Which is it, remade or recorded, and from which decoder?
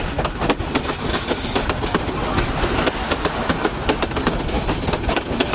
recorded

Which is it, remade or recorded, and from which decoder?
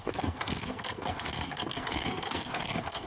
remade, codec, SNAC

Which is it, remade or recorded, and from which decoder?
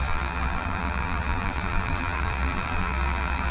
remade, vocoder, BigVGAN v2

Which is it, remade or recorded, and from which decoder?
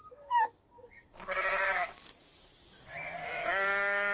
remade, codec, DAC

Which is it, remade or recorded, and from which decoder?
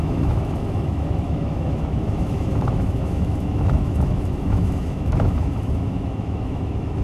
remade, autoencoder, DAC-VAE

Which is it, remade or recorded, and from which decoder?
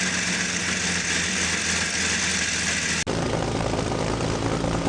recorded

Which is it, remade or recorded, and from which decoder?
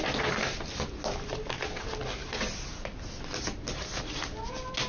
recorded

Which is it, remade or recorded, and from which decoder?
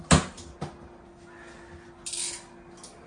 recorded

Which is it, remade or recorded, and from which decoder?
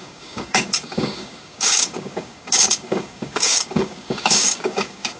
remade, codec, DAC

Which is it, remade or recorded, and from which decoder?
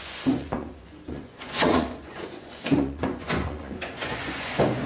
remade, vocoder, Vocos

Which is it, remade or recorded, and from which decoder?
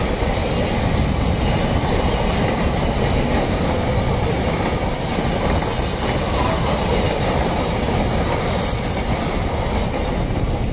recorded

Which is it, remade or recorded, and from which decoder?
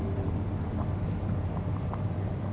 recorded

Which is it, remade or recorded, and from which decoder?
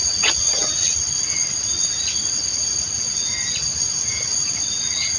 recorded